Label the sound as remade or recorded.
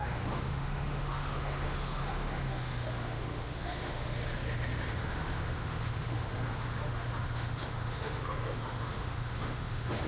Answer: remade